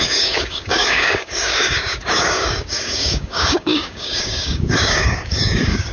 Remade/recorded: remade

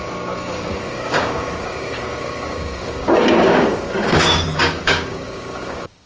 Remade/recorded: remade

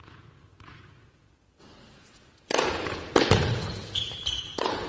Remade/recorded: remade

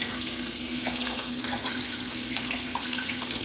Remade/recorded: remade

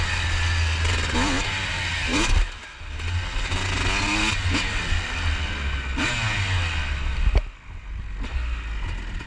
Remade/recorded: recorded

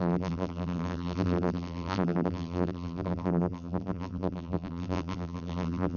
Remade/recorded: remade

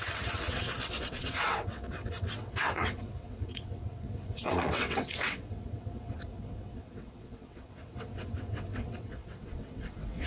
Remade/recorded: remade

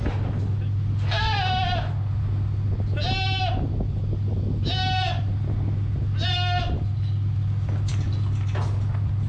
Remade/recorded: recorded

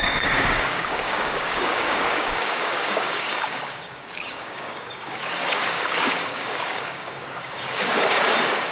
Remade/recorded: remade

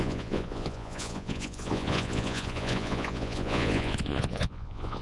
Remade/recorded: remade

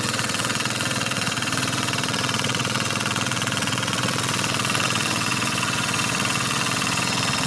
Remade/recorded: remade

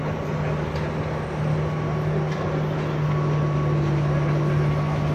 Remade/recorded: recorded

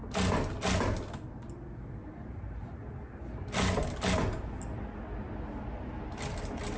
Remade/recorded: recorded